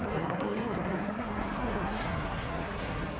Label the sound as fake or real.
fake